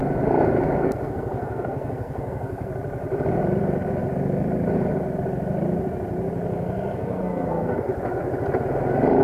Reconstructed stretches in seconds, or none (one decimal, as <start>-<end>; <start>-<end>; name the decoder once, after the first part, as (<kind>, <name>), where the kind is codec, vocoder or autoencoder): 0.6-2.7 (codec, SNAC); 6.5-7.9